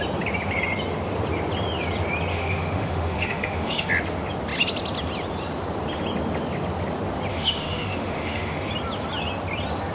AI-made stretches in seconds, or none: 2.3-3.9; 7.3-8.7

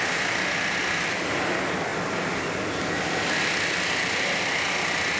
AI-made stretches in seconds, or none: none